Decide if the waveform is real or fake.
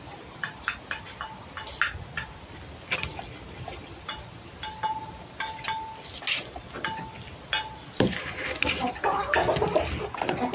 real